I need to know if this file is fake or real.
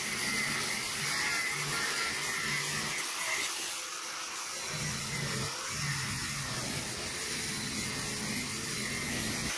real